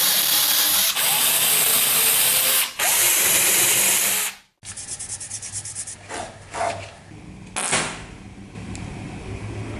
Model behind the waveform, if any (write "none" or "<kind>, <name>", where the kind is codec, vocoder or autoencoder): none